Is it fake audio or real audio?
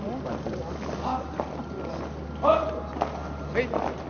real